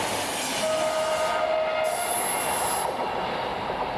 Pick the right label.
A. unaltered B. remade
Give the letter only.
A